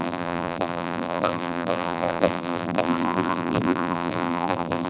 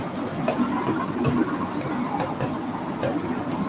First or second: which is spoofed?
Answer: first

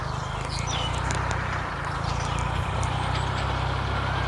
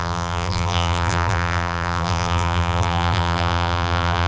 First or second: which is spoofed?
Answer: second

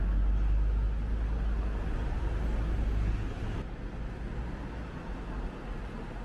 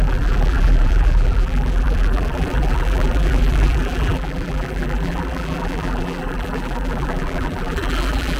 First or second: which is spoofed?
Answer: second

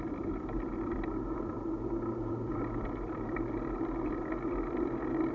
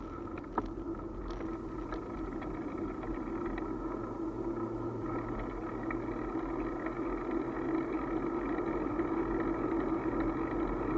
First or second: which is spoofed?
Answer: first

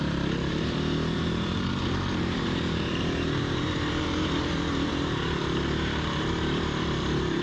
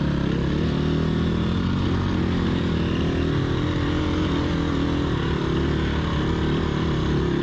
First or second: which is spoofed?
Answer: first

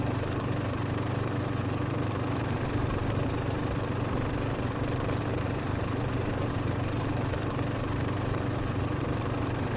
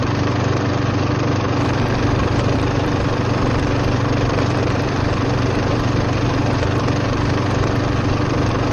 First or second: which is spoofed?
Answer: first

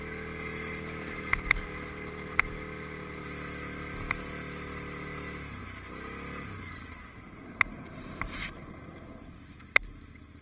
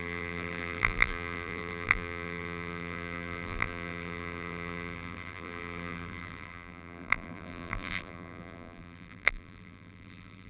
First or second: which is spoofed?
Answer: second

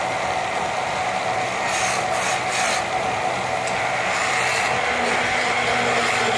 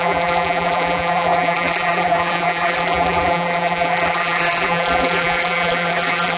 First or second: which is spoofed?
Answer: second